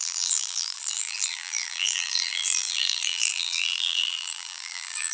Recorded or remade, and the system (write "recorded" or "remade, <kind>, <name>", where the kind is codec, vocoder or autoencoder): remade, vocoder, BigVGAN v2